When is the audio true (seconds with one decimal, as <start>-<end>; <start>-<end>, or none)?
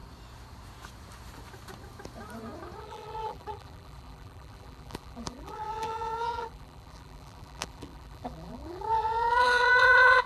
0.0-2.8